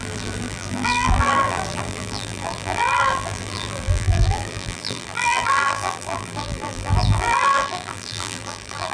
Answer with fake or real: fake